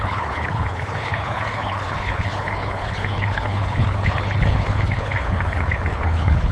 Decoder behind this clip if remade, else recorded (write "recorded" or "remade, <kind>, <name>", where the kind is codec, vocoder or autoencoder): remade, codec, HILCodec